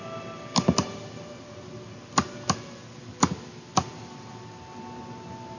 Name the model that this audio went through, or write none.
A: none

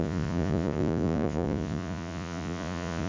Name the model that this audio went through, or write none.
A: vocoder, Vocos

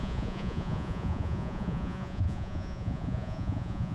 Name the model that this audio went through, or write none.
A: vocoder, Vocos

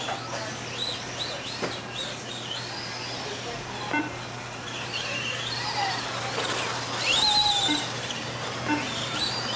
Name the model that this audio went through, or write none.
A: none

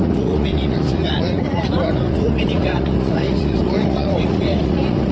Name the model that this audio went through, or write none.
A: vocoder, Vocos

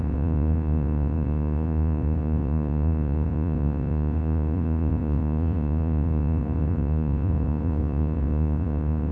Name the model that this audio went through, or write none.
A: vocoder, Vocos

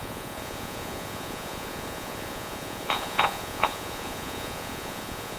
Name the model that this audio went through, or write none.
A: vocoder, Vocos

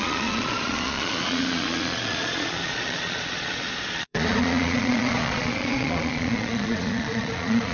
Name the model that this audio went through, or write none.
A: vocoder, Vocos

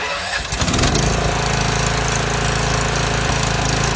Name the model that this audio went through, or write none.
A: none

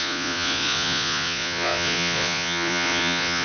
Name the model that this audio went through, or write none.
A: vocoder, Vocos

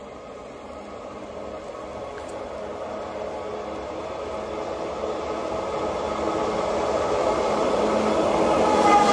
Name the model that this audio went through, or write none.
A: none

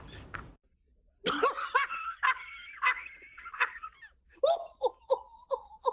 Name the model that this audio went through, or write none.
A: none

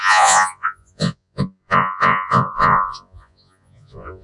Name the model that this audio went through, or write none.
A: vocoder, Vocos